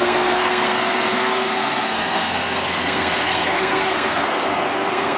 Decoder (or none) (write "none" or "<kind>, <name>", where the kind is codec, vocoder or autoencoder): codec, SNAC